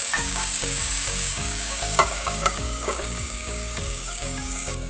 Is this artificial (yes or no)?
yes